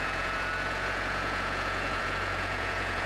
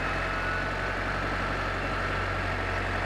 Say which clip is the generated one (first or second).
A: first